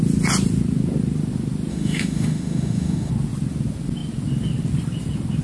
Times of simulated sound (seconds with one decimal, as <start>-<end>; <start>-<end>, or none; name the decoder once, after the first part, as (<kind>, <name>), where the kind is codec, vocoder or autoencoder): 1.7-3.1 (autoencoder, DAC-VAE)